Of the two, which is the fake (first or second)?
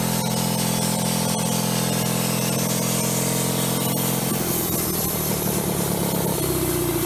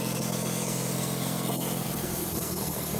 second